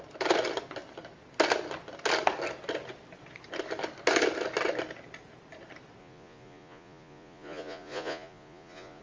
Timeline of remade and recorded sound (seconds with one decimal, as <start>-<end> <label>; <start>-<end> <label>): 0.0-6.0 recorded; 6.0-9.0 remade